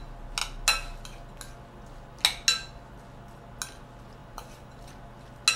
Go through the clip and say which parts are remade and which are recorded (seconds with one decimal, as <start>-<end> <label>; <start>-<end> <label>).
0.0-4.2 recorded; 4.2-4.9 remade; 4.9-5.6 recorded